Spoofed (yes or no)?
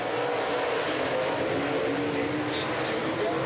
no